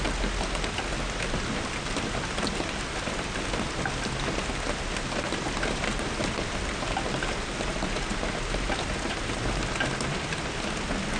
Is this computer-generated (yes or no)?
no